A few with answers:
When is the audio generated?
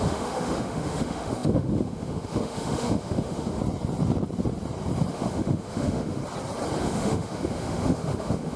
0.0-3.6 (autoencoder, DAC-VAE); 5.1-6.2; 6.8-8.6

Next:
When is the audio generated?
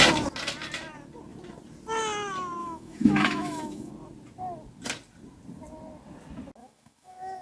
2.6-3.9 (autoencoder, DAC-VAE); 6.6-7.4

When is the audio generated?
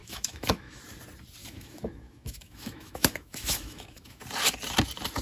0.0-0.8 (autoencoder, DAC-VAE); 1.4-4.2